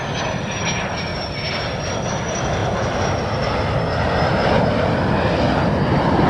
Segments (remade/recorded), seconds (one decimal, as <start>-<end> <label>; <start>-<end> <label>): 0.0-6.3 recorded